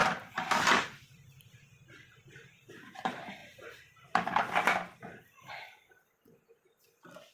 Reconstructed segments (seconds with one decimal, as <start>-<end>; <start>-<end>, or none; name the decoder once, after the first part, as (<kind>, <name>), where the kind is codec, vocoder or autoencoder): none